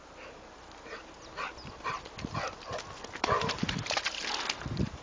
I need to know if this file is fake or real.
real